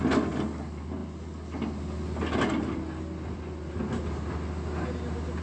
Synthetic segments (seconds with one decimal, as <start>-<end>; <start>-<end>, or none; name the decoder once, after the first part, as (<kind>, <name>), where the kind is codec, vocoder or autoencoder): none